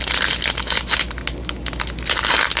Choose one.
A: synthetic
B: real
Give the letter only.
B